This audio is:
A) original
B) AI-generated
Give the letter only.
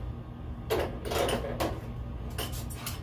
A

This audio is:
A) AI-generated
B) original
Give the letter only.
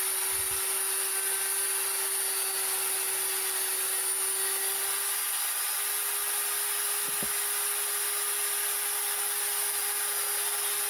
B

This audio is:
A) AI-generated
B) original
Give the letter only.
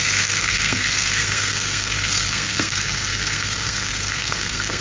A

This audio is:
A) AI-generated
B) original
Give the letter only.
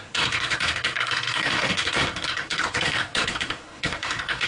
A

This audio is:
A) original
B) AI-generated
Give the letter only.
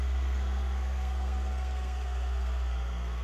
B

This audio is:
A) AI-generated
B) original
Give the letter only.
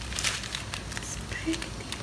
B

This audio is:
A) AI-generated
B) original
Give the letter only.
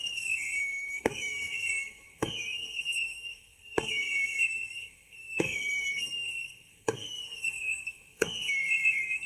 A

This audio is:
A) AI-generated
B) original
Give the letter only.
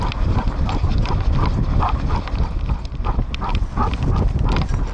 B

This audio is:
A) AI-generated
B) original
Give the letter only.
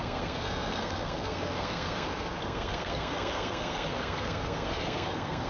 A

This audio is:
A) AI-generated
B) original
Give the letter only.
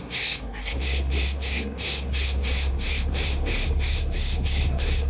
A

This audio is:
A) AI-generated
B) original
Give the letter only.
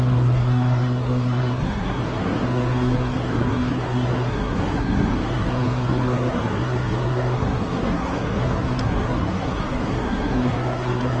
A